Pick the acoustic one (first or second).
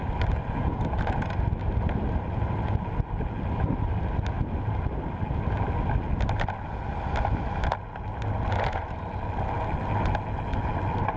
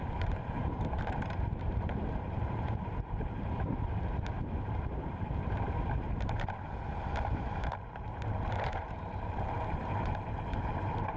first